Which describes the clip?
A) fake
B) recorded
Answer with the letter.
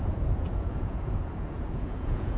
A